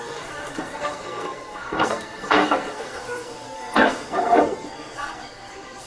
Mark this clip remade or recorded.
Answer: remade